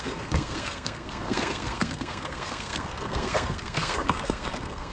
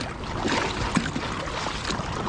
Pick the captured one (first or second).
second